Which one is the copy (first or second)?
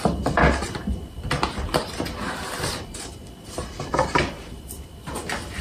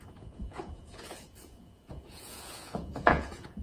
second